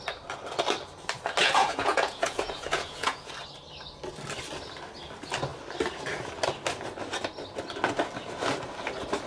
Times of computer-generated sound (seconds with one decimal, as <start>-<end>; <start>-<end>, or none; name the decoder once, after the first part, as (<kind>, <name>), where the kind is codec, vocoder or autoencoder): 1.4-3.3 (vocoder, Vocos)